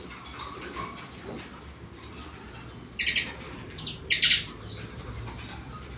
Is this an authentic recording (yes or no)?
yes